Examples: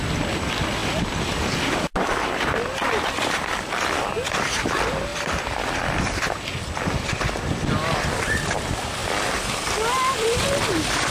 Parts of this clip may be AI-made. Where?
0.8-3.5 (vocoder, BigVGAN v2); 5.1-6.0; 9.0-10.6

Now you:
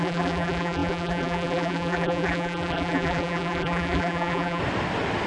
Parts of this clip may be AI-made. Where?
0.0-4.6 (vocoder, BigVGAN v2)

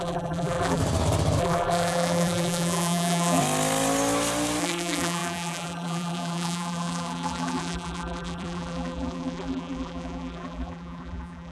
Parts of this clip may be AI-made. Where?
0.0-0.8 (vocoder, BigVGAN v2); 1.4-3.4; 4.6-11.5

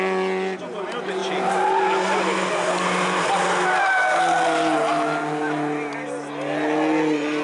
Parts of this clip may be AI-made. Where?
none

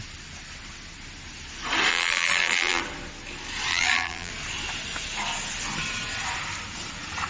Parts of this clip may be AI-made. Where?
1.9-2.8 (vocoder, BigVGAN v2); 3.7-4.3

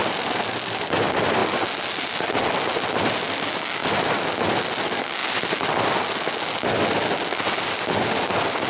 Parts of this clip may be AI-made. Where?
3.8-4.6 (vocoder, BigVGAN v2); 5.2-5.8

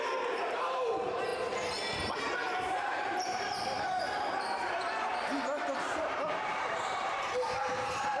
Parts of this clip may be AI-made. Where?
0.0-1.3 (vocoder, BigVGAN v2); 2.1-8.2

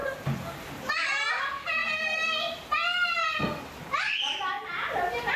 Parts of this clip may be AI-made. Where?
none